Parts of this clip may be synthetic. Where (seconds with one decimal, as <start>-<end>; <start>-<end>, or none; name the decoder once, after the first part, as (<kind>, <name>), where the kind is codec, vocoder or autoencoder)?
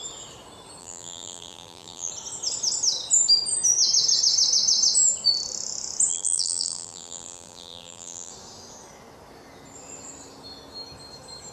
0.8-2.1 (vocoder, BigVGAN v2); 6.1-8.3